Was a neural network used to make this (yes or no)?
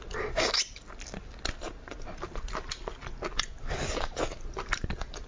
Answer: no